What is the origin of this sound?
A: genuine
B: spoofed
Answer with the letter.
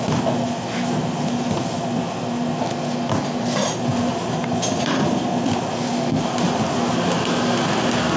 A